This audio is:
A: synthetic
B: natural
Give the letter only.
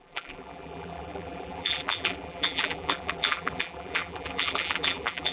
A